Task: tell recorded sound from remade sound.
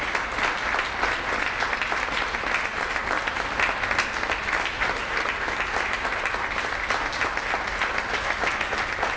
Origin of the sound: recorded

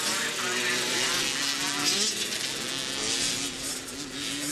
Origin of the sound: recorded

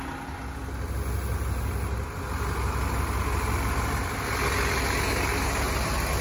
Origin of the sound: recorded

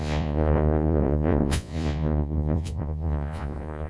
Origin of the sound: remade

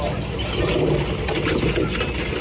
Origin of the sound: recorded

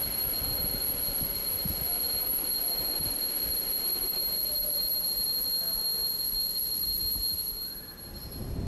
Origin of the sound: recorded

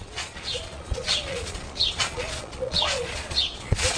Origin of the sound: remade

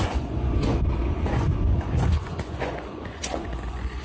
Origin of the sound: remade